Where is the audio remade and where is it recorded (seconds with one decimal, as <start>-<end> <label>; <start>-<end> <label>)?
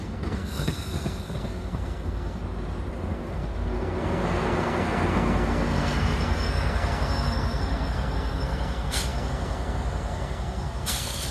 0.0-2.4 remade; 2.4-2.9 recorded; 2.9-11.3 remade